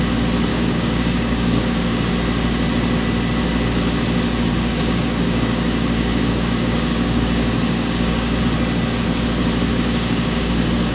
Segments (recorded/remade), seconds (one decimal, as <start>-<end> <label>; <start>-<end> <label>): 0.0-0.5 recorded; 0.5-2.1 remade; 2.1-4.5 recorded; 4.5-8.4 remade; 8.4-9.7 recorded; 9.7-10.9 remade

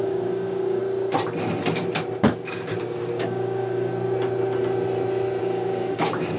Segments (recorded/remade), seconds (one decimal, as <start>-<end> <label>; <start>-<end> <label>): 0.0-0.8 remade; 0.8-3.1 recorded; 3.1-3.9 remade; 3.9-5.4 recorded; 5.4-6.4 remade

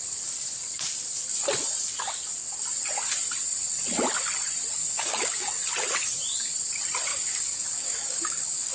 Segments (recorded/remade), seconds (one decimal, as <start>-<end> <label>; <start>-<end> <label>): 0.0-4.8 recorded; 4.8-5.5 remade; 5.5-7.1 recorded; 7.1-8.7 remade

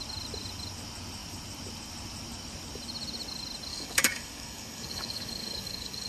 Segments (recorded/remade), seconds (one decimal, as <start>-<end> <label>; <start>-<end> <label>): 0.0-3.7 recorded; 3.7-6.1 remade

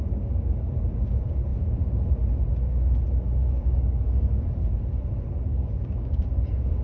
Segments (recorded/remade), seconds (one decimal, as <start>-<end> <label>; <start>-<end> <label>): 0.0-3.4 recorded; 3.4-4.5 remade; 4.5-5.5 recorded; 5.5-6.2 remade; 6.2-6.8 recorded

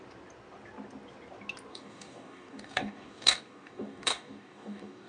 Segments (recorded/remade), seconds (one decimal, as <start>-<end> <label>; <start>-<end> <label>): 0.0-1.7 recorded; 1.7-5.1 remade

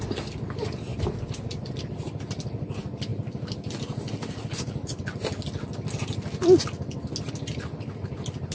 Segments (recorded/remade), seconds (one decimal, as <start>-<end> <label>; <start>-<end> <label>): 0.0-8.5 recorded

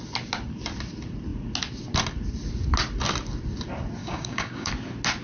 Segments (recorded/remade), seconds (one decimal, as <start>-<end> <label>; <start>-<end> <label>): 0.0-4.0 recorded; 4.0-4.7 remade; 4.7-5.2 recorded